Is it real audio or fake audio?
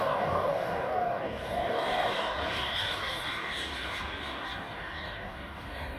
fake